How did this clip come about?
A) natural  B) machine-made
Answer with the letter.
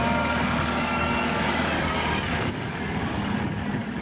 B